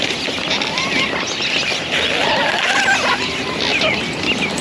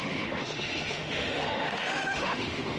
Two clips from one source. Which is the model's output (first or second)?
second